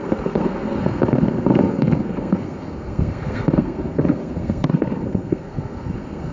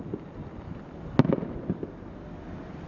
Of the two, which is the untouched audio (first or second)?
second